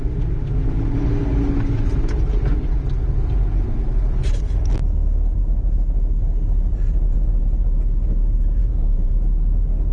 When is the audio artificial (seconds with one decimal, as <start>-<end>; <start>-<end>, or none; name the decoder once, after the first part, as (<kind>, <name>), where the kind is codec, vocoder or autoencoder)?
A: 6.7-7.4 (vocoder, Vocos); 8.6-9.1